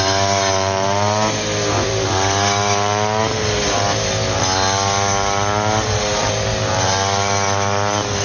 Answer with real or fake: real